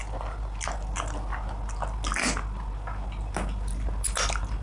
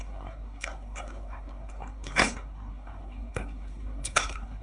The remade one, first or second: second